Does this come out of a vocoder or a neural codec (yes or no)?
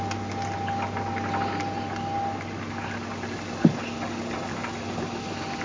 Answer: no